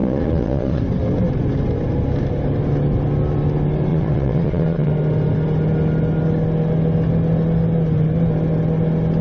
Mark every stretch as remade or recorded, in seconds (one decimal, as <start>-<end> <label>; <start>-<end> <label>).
0.0-0.8 remade; 0.8-3.9 recorded; 3.9-4.9 remade; 4.9-9.2 recorded